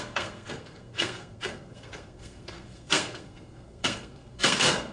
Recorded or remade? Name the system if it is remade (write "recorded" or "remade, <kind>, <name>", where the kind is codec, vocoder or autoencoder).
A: remade, codec, SNAC